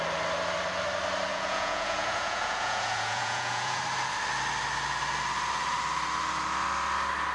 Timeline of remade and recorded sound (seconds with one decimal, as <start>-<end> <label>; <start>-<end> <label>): 0.0-1.3 recorded; 1.3-3.8 remade; 3.8-7.3 recorded